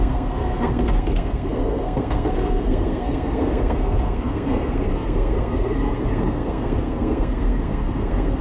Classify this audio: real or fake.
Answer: fake